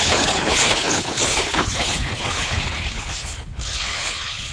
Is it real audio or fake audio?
fake